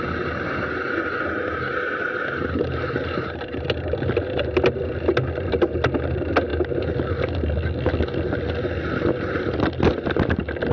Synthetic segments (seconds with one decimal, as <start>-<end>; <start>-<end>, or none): none